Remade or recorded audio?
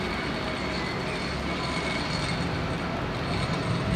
recorded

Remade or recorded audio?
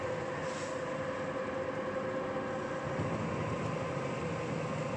recorded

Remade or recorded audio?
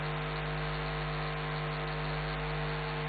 recorded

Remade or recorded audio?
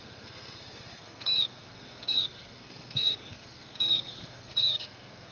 remade